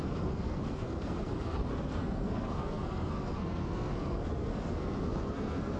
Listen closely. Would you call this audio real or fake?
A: fake